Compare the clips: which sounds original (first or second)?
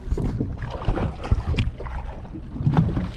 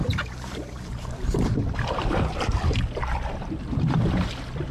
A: first